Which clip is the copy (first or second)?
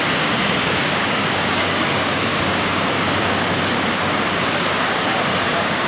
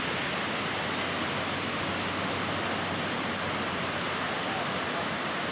first